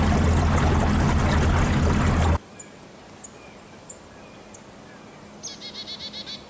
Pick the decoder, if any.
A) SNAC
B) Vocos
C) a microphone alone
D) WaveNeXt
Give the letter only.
C